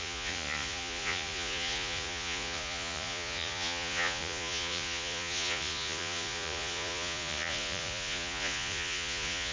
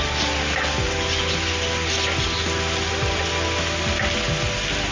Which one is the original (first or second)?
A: second